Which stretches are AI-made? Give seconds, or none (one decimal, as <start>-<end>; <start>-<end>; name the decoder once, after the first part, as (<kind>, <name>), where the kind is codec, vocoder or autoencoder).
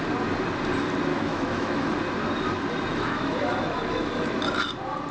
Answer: 1.1-2.0 (autoencoder, DAC-VAE); 2.9-4.3